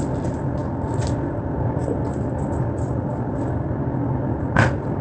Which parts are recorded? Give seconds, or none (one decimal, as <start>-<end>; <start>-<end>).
0.0-5.0